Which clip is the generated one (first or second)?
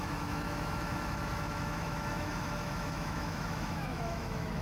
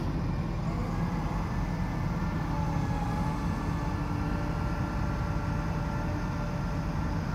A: first